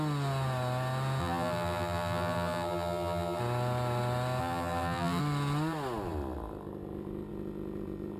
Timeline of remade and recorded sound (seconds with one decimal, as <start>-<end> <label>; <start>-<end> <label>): 0.0-1.2 recorded; 1.2-3.4 remade; 3.4-4.4 recorded; 4.4-5.2 remade; 5.2-8.2 recorded

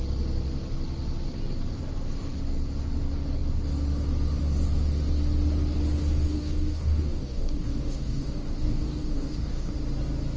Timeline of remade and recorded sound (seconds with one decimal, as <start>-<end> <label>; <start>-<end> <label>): 0.0-6.0 recorded; 6.0-9.7 remade; 9.7-10.4 recorded

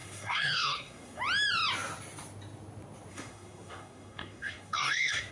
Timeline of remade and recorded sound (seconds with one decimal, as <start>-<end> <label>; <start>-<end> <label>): 0.0-1.2 remade; 1.2-3.1 recorded; 3.1-5.3 remade

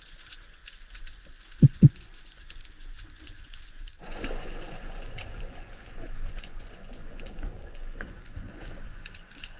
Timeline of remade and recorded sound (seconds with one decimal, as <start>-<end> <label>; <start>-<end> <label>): 0.0-0.6 remade; 0.6-1.4 recorded; 1.4-9.6 remade

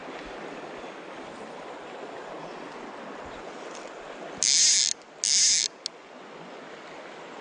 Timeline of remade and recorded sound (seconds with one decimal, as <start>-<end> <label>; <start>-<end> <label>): 0.0-6.0 recorded; 6.0-6.6 remade; 6.6-7.4 recorded